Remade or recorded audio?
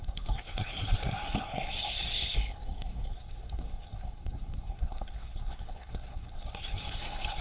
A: remade